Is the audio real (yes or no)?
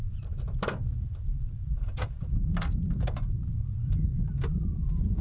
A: no